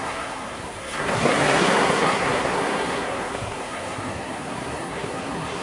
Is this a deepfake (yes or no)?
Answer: yes